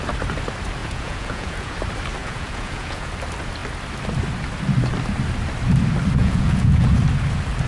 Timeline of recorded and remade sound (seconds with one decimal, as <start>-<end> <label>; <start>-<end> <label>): 0.0-0.8 recorded; 0.8-1.7 remade; 1.7-2.2 recorded; 2.2-3.1 remade; 3.1-6.2 recorded; 6.2-6.9 remade; 6.9-7.7 recorded